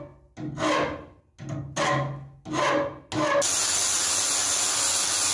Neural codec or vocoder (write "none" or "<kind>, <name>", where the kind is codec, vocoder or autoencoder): none